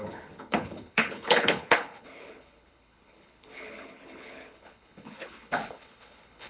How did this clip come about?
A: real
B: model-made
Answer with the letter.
B